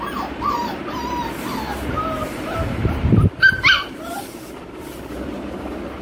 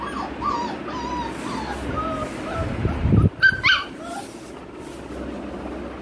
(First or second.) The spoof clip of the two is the first